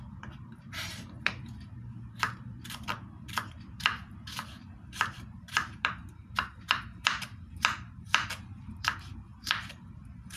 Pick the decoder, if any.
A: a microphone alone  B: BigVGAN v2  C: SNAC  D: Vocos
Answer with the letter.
B